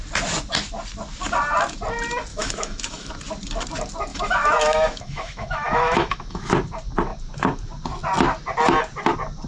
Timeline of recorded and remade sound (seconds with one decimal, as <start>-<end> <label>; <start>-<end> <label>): 0.0-2.3 recorded; 2.3-3.1 remade; 3.1-4.1 recorded; 4.1-6.5 remade; 6.5-9.5 recorded